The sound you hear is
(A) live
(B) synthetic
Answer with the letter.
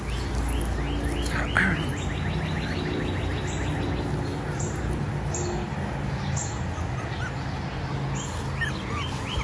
A